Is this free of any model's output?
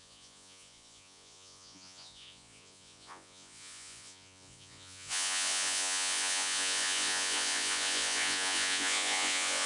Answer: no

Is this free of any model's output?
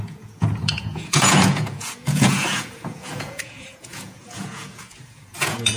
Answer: no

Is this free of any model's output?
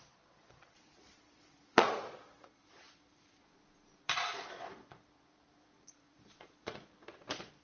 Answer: no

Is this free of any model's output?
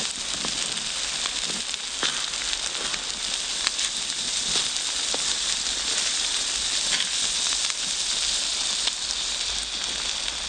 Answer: yes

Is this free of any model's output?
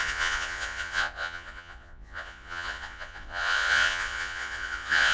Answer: no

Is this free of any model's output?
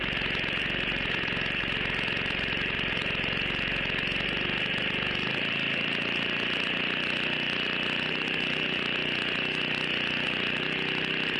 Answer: yes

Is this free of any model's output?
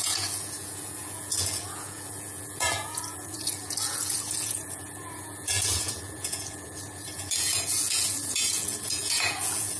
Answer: no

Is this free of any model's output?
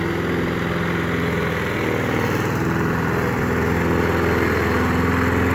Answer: yes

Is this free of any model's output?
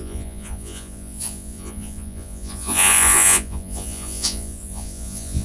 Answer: no